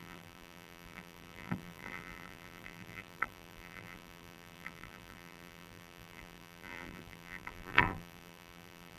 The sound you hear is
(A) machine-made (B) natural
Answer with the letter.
A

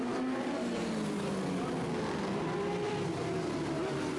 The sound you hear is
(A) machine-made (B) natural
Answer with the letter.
B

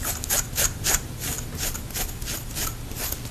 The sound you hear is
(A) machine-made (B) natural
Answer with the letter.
B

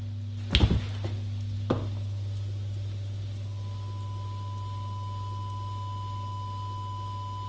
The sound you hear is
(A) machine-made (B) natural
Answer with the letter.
B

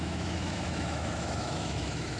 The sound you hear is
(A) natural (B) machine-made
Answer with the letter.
B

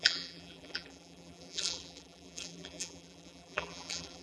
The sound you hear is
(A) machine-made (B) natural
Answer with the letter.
A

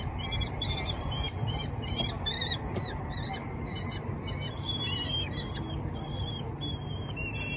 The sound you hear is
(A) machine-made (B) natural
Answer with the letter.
B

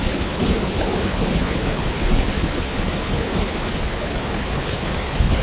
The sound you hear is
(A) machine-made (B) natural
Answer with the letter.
A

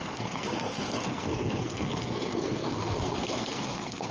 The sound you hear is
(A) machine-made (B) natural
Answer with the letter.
A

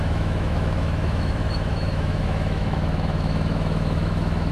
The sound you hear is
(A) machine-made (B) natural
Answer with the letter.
A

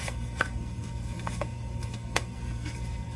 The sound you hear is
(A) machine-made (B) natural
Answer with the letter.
A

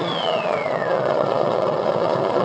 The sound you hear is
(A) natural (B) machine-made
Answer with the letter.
B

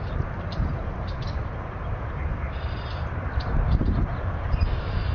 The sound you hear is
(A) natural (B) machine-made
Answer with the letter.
B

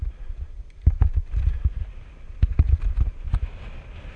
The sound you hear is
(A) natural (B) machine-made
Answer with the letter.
A